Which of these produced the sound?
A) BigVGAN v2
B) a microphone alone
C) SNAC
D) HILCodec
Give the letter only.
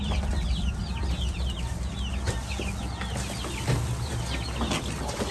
B